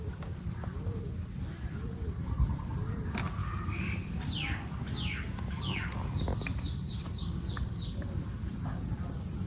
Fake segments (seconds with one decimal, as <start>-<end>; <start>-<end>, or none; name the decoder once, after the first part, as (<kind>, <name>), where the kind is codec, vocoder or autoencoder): none